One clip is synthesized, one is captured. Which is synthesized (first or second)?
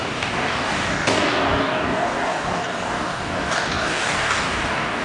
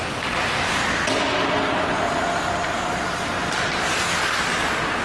first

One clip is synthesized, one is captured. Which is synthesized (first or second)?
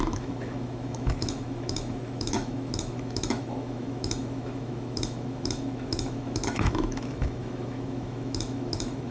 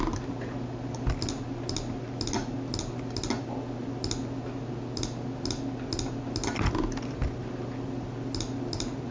first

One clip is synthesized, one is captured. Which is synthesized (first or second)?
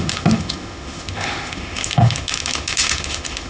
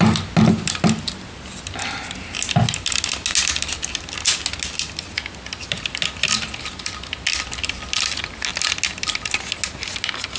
first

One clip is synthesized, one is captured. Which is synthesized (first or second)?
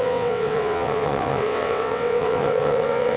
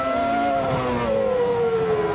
first